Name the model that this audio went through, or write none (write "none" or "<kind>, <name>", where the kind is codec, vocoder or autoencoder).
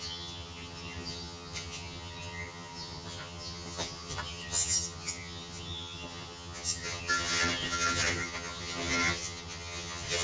vocoder, HiFi-GAN